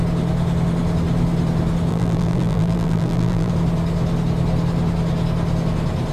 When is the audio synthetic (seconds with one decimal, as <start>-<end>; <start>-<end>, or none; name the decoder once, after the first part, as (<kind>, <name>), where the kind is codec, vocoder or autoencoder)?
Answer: 1.9-3.5 (vocoder, BigVGAN v2)